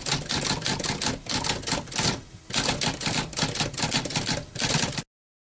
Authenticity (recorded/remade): recorded